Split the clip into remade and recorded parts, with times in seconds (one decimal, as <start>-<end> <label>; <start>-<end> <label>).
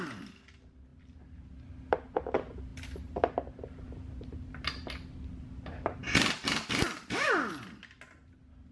0.0-8.7 recorded